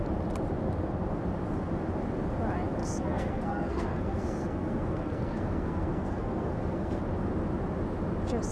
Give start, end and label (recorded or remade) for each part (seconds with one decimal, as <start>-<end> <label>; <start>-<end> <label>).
0.0-2.8 recorded; 2.8-7.0 remade; 7.0-8.5 recorded